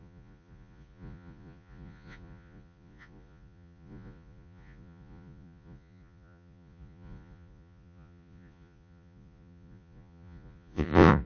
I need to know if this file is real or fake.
fake